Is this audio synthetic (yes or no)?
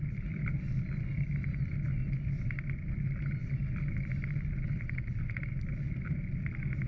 no